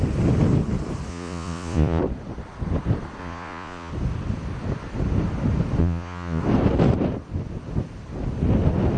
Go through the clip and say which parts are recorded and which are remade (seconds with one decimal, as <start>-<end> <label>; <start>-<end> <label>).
0.0-1.1 recorded; 1.1-2.0 remade; 2.0-3.2 recorded; 3.2-3.9 remade; 3.9-5.8 recorded; 5.8-6.4 remade; 6.4-9.0 recorded